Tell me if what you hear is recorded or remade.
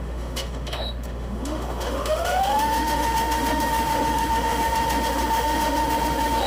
remade